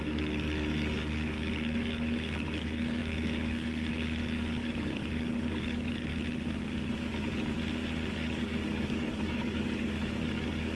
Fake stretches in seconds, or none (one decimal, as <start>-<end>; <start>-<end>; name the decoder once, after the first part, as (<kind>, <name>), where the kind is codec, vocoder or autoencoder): 0.0-6.1 (codec, DAC); 8.1-10.7